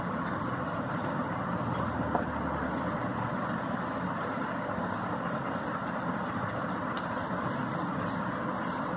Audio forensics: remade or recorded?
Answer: recorded